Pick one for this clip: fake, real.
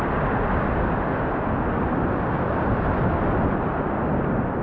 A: real